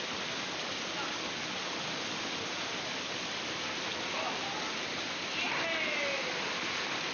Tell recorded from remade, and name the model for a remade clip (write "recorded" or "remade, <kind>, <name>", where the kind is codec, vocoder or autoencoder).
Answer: recorded